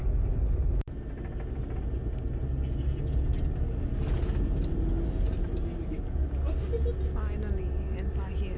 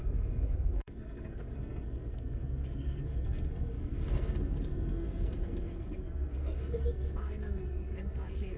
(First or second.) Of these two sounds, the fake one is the second